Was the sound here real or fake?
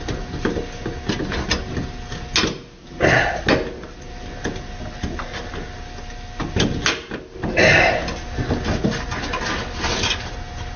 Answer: real